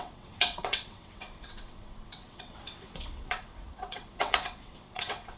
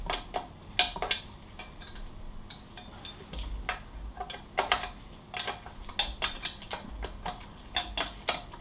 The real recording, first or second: second